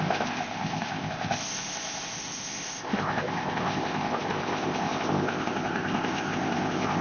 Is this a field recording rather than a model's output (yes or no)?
no